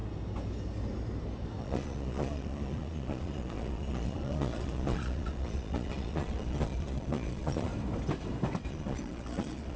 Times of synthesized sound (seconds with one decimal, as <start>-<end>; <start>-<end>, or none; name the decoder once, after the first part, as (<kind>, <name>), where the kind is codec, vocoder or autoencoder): 1.6-7.7 (vocoder, Vocos); 8.7-9.8